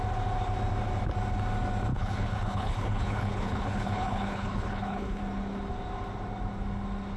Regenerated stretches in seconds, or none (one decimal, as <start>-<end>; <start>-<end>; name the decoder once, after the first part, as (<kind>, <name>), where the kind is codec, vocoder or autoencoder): 1.9-5.2 (codec, HILCodec)